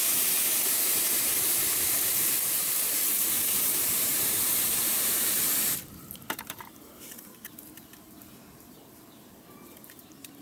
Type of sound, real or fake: fake